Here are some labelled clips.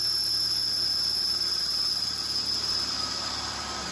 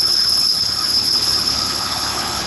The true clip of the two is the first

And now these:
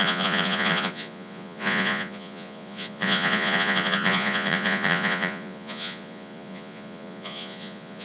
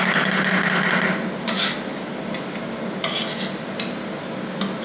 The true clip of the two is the second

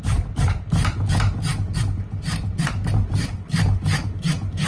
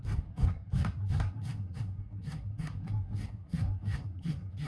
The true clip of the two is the first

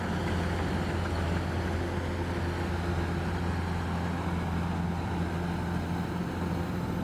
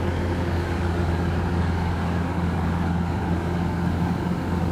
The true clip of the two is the first